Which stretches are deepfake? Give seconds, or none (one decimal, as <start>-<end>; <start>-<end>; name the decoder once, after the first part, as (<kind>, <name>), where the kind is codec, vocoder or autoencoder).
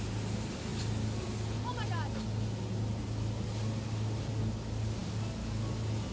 none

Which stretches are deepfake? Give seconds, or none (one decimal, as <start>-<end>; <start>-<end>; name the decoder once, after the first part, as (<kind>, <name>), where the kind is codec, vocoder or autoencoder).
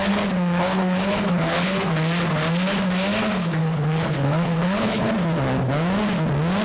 0.0-1.9 (codec, HILCodec); 3.6-5.1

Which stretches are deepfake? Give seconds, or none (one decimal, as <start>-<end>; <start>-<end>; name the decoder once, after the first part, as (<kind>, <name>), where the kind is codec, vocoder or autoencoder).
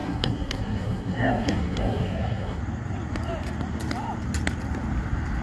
0.0-2.6 (codec, SNAC)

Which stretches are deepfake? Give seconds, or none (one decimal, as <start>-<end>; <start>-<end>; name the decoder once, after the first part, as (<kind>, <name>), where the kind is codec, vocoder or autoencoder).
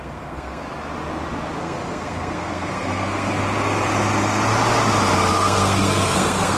0.0-0.6 (codec, SNAC); 1.6-3.4; 5.3-6.6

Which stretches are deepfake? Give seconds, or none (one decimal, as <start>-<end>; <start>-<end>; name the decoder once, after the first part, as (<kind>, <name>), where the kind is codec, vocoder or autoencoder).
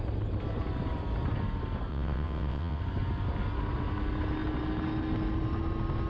1.9-2.8 (vocoder, WaveNeXt)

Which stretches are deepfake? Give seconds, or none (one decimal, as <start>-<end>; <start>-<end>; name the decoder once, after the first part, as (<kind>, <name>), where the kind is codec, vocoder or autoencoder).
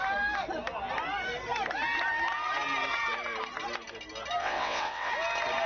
4.4-5.1 (vocoder, WaveNeXt)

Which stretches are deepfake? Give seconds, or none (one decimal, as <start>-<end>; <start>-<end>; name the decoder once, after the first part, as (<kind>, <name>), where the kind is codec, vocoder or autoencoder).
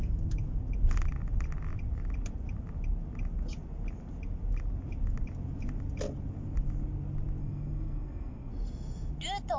7.4-8.5 (codec, SNAC)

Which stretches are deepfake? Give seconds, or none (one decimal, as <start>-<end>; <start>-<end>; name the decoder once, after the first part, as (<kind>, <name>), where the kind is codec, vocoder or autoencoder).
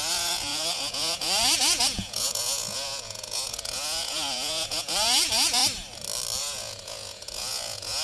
0.0-5.6 (vocoder, Vocos); 6.4-8.0